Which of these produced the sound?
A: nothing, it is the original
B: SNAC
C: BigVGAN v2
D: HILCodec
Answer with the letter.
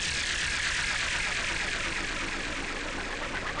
A